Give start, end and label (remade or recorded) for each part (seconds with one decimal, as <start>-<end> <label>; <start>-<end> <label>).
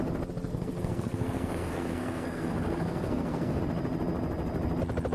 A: 0.0-0.5 recorded; 0.5-3.6 remade; 3.6-5.1 recorded